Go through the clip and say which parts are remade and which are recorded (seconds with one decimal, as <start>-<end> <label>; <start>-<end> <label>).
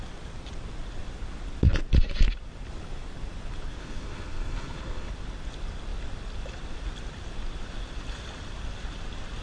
0.0-3.8 recorded; 3.8-5.1 remade; 5.1-9.4 recorded